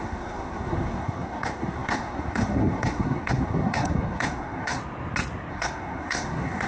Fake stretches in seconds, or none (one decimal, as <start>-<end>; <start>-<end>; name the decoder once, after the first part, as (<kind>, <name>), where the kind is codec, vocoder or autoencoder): 0.0-4.8 (codec, SNAC); 5.5-6.7